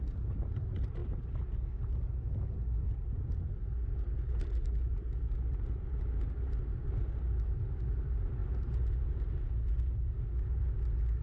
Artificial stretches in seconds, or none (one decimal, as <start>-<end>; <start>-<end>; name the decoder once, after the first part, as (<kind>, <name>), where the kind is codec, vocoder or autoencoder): none